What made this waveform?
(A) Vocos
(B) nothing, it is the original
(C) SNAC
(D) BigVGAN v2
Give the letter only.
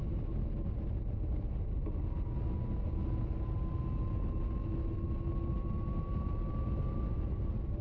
B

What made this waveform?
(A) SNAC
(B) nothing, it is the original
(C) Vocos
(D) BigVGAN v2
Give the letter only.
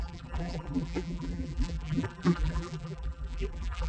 D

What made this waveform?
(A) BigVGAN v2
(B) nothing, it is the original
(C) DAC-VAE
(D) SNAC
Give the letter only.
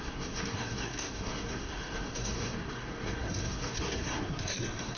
D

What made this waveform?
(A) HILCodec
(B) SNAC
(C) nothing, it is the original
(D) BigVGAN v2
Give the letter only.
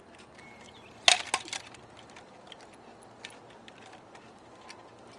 C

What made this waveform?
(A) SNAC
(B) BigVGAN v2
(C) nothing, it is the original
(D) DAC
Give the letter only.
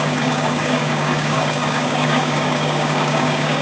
D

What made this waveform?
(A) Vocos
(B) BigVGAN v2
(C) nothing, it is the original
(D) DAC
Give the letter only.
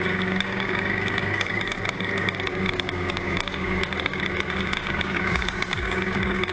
D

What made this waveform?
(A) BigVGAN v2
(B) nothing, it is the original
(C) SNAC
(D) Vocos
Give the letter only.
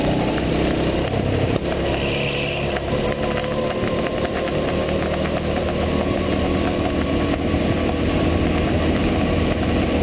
A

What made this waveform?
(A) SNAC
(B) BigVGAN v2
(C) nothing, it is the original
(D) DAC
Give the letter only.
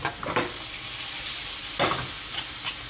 C